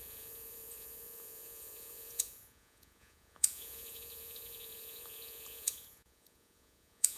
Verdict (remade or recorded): remade